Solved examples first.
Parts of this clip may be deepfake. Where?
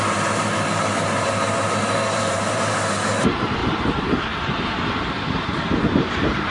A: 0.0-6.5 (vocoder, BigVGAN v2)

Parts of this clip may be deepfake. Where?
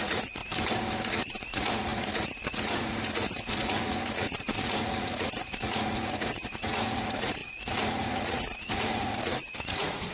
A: 0.0-0.4 (vocoder, Vocos); 1.1-10.1